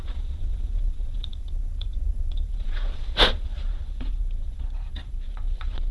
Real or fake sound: fake